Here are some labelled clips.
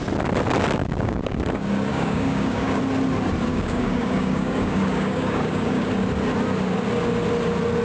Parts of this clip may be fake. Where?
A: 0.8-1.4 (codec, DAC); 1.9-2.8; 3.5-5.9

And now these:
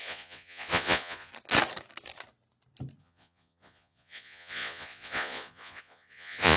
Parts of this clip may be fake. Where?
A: 0.0-1.3 (vocoder, Vocos); 3.0-6.6

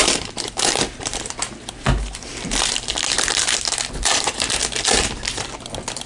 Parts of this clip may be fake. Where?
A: 0.0-1.4 (vocoder, BigVGAN v2)

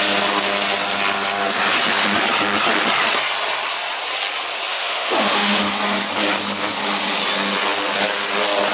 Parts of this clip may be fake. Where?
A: 4.7-5.6 (autoencoder, DAC-VAE)

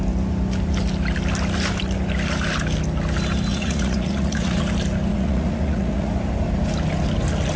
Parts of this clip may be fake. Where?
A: 3.5-4.6 (vocoder, Vocos); 5.1-6.1

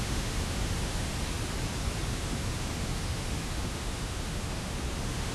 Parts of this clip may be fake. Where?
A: 0.0-1.1 (autoencoder, DAC-VAE); 2.1-5.3

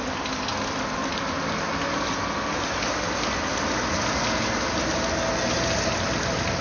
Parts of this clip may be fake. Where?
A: none

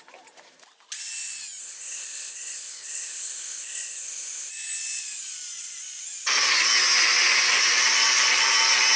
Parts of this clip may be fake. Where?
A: 1.6-4.5 (codec, ZipCodec)